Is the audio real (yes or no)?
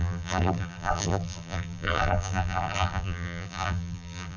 no